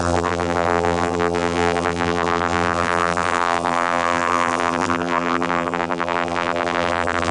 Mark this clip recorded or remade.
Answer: remade